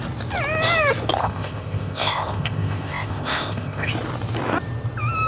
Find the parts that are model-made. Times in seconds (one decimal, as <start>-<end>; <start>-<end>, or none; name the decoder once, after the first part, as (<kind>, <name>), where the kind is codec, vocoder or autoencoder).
1.2-3.9 (codec, ZipCodec)